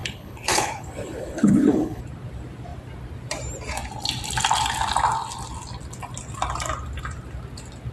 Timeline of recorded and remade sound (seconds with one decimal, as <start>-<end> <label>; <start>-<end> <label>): 0.0-2.0 remade; 2.0-7.9 recorded